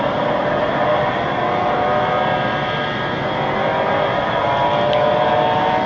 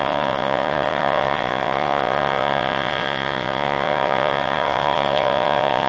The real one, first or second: first